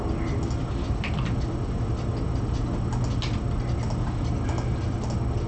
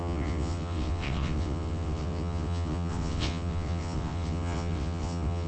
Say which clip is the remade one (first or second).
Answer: second